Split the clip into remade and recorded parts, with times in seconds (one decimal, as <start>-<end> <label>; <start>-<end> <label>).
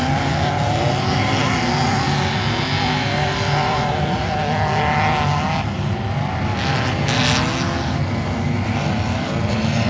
0.0-9.9 recorded